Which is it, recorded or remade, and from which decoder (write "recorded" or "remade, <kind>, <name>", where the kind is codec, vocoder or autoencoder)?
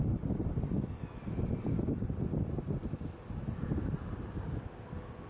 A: recorded